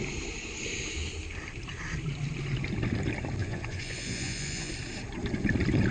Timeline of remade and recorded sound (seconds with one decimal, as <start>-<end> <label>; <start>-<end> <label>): 0.0-3.4 recorded; 3.4-4.7 remade; 4.7-5.9 recorded